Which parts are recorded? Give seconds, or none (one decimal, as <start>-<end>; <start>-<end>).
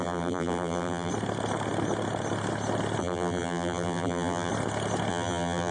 1.1-3.0; 4.5-5.1